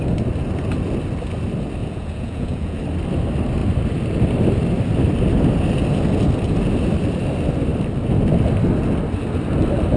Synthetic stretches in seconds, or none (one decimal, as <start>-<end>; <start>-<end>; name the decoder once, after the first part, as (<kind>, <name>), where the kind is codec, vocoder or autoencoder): 1.8-2.8 (vocoder, Vocos)